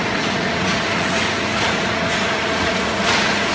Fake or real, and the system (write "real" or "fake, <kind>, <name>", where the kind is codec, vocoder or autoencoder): fake, vocoder, Vocos